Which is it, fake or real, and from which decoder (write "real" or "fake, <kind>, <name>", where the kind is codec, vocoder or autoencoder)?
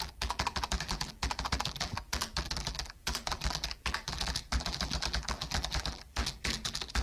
fake, vocoder, BigVGAN v2